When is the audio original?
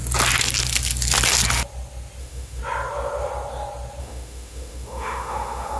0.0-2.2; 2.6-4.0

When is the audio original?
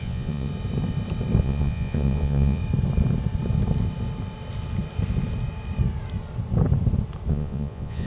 0.5-1.4; 2.6-7.3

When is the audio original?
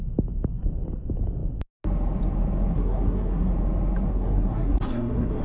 0.0-2.7; 3.5-4.1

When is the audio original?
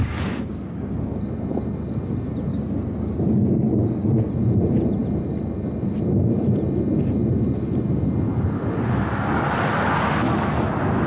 1.2-2.5; 4.3-11.1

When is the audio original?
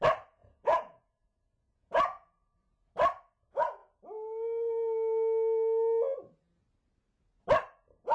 0.0-0.4; 2.9-8.1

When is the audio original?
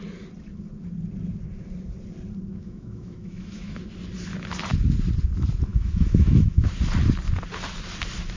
0.0-2.5; 3.8-5.7; 6.7-8.4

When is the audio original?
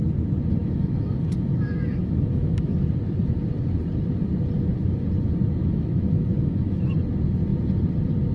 0.0-0.6; 2.7-5.6; 6.8-8.3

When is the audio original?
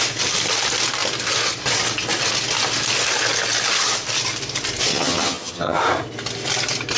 0.0-4.9; 5.8-7.0